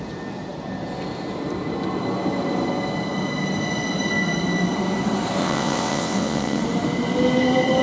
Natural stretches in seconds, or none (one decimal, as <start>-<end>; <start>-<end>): 0.0-5.4; 6.6-7.8